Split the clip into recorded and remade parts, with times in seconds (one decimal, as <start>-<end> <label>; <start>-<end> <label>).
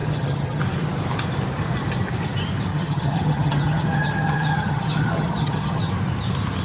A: 0.0-0.6 remade; 0.6-2.7 recorded; 2.7-5.9 remade; 5.9-6.6 recorded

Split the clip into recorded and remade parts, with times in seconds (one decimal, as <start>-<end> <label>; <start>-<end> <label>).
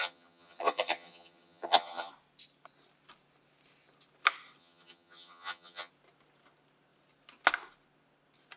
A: 0.0-2.1 remade; 2.1-4.6 recorded; 4.6-5.9 remade; 5.9-8.6 recorded